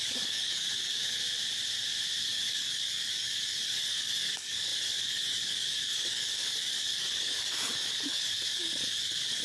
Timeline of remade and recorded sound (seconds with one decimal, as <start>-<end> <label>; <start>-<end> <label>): 0.0-1.2 remade; 1.2-2.2 recorded; 2.2-9.4 remade

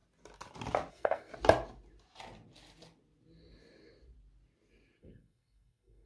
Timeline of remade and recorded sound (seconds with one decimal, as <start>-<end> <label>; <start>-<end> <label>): 0.0-0.9 recorded; 0.9-1.3 remade; 1.3-5.0 recorded; 5.0-6.1 remade

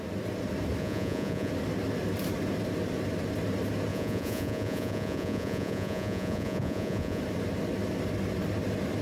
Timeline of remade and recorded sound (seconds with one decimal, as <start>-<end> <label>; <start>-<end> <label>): 0.0-0.8 recorded; 0.8-1.5 remade; 1.5-3.9 recorded; 3.9-7.2 remade; 7.2-9.0 recorded

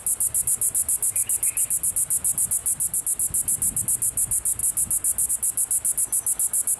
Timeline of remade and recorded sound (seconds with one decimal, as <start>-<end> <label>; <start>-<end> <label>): 0.0-6.8 recorded

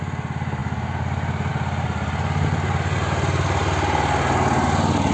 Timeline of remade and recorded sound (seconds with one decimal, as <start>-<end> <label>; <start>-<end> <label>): 0.0-5.1 recorded

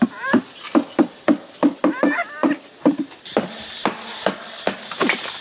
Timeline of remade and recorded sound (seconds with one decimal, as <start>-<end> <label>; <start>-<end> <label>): 0.0-0.6 remade; 0.6-5.4 recorded

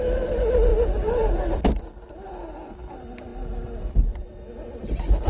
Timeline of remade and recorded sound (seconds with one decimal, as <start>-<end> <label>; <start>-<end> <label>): 0.0-5.3 recorded

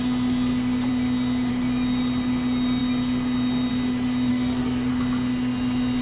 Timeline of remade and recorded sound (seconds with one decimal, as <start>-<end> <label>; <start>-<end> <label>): 0.0-4.3 recorded; 4.3-4.9 remade; 4.9-6.0 recorded